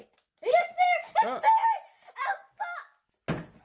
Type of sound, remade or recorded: recorded